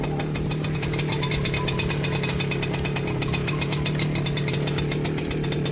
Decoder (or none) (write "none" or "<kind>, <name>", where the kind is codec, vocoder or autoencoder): none